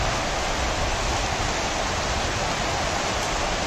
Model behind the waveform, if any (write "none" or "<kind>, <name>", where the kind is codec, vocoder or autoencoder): none